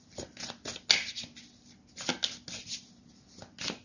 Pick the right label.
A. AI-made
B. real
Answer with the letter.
B